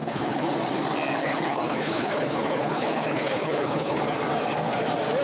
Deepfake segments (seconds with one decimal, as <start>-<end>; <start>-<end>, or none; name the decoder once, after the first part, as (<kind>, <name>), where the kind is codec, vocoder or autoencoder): 0.0-0.5 (codec, HILCodec); 1.2-4.0